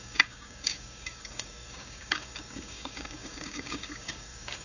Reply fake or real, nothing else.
fake